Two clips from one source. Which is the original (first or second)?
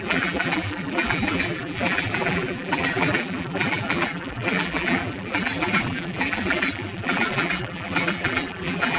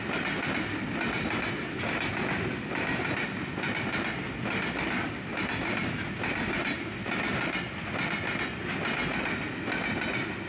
second